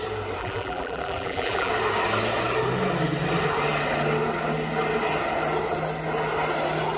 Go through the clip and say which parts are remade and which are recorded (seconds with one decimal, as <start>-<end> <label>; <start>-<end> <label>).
0.0-0.4 recorded; 0.4-1.7 remade; 1.7-7.0 recorded

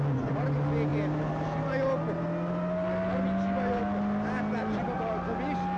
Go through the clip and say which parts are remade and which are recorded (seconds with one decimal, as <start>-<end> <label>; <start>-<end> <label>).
0.0-5.8 recorded